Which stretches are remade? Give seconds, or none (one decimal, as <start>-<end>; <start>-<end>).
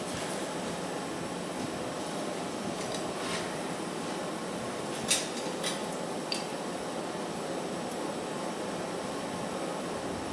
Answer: none